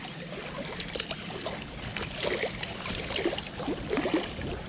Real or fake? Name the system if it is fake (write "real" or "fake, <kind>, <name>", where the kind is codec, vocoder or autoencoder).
real